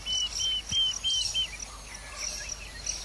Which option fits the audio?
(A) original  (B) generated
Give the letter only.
A